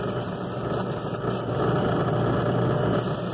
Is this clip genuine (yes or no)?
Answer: yes